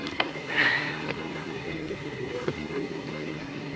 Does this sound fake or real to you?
fake